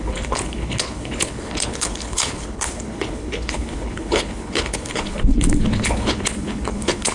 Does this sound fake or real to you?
fake